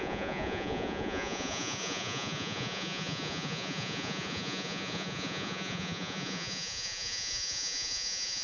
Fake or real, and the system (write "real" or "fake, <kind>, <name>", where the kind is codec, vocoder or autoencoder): fake, vocoder, Vocos